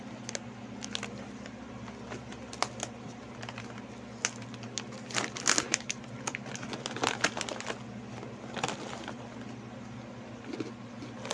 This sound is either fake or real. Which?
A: real